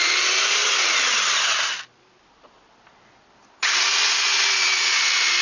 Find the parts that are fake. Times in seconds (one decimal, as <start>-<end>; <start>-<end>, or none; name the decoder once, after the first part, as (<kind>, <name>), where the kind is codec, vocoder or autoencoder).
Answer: none